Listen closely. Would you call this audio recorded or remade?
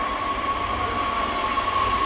recorded